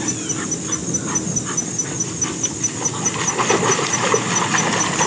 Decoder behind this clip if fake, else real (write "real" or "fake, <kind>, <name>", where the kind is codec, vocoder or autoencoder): real